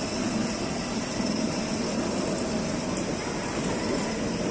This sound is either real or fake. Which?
real